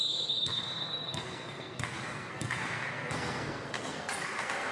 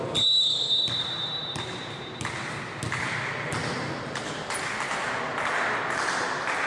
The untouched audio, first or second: second